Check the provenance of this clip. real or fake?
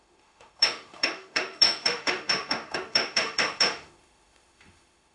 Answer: fake